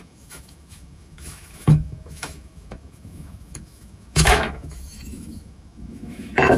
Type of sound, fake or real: fake